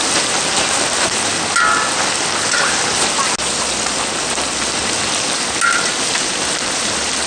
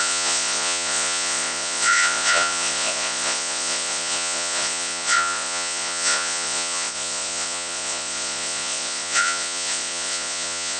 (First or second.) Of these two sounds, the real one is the first